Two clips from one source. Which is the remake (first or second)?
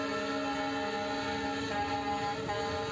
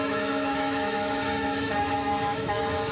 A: second